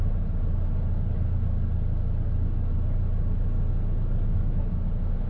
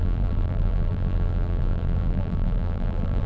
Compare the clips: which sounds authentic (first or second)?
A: first